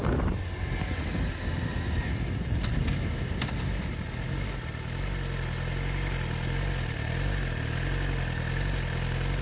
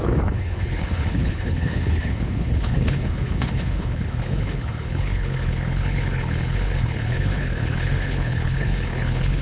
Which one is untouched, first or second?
first